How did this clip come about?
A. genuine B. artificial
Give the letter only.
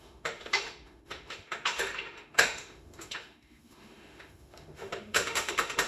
B